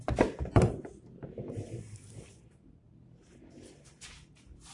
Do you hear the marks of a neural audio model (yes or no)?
yes